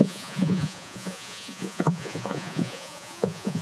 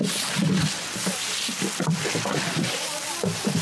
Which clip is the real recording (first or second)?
second